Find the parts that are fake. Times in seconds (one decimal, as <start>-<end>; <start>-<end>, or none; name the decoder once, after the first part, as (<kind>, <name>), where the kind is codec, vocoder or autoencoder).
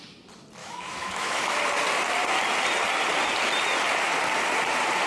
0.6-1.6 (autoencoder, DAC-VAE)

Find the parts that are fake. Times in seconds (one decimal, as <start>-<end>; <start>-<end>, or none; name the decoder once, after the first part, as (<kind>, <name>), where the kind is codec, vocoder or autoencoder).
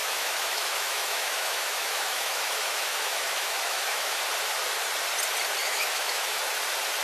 0.0-4.2 (autoencoder, DAC-VAE); 5.6-6.4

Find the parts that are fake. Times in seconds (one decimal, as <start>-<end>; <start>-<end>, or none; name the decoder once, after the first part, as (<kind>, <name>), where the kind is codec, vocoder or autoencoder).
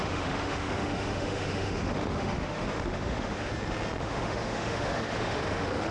0.0-3.5 (autoencoder, DAC-VAE); 4.0-5.9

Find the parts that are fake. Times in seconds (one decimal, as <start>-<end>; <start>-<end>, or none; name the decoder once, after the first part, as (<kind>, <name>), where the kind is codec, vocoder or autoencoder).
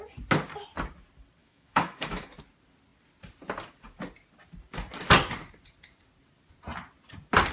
1.4-2.4 (autoencoder, DAC-VAE)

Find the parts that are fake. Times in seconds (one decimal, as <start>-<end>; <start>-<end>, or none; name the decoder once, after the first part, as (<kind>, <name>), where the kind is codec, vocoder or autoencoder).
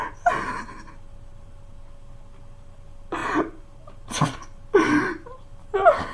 none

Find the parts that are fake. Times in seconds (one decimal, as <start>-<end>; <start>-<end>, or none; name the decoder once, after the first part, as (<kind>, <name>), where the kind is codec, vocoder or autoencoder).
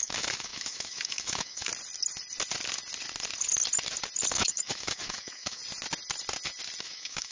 0.0-1.7 (autoencoder, DAC-VAE); 4.3-5.6; 6.8-7.3